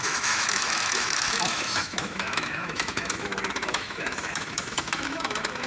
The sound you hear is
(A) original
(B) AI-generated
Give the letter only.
B